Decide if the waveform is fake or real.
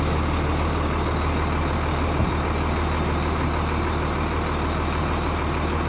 real